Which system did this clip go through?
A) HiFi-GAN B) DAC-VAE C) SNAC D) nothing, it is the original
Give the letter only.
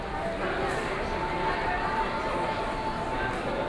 D